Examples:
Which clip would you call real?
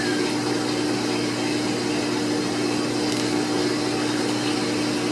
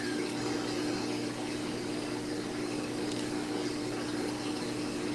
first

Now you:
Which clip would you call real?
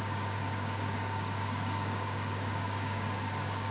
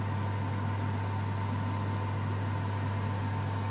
second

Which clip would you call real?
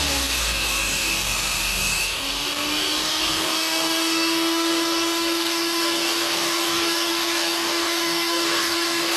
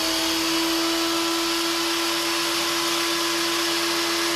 second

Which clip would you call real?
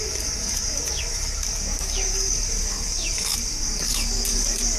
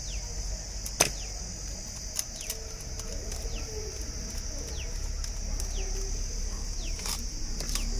second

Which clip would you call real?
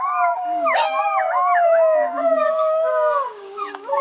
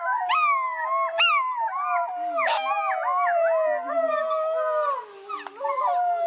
second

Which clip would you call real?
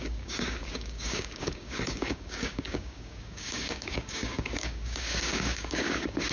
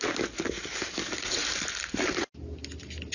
second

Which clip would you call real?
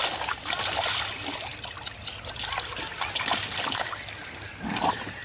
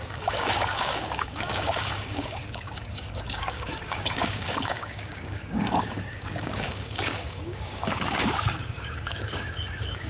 first